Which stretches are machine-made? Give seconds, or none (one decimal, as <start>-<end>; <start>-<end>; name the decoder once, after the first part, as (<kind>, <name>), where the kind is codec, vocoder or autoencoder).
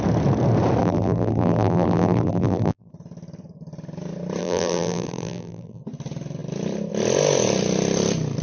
0.8-2.9 (vocoder, BigVGAN v2); 4.4-5.8